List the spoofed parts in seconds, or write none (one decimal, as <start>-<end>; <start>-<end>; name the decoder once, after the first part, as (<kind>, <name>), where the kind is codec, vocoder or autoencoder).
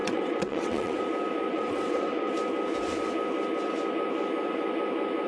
0.0-1.0 (vocoder, WaveNeXt); 1.5-2.3